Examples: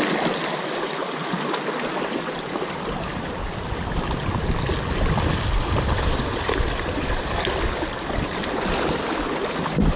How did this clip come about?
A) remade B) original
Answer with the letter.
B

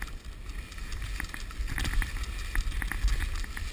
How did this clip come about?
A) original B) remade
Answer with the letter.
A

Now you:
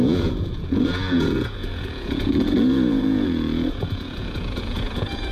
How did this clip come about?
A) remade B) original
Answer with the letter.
A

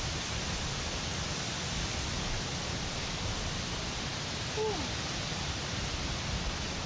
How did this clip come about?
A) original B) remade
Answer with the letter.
A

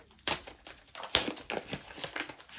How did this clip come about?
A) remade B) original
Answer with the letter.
B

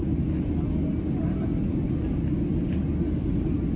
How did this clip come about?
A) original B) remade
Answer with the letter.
A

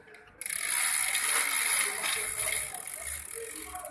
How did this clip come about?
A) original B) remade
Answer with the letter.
A